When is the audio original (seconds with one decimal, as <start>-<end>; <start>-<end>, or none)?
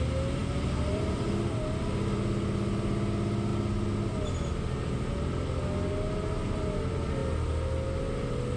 0.0-0.4; 1.0-8.6